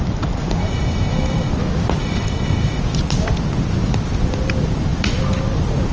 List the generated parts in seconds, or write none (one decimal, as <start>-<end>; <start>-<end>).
0.6-1.5; 2.0-2.8